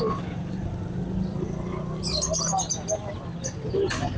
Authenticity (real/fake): real